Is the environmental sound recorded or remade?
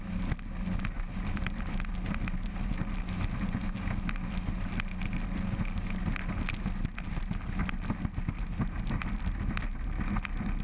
recorded